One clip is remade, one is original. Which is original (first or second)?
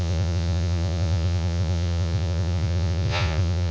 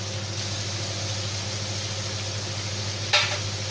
second